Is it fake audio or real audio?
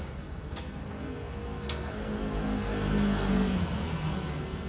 fake